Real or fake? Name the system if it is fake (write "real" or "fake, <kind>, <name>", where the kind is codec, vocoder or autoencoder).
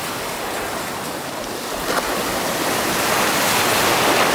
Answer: real